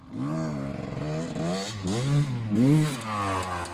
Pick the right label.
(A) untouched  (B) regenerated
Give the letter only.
A